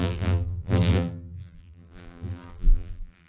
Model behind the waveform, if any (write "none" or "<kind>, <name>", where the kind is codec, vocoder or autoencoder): vocoder, BigVGAN v2